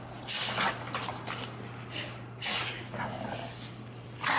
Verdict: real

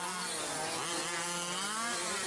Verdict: real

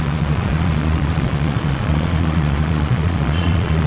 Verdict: fake